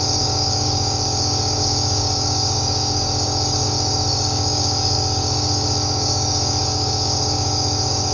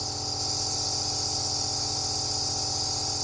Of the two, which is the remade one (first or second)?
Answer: first